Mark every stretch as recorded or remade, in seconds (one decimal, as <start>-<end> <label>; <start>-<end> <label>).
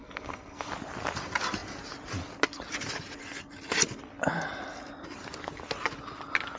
0.0-0.7 remade; 0.7-6.6 recorded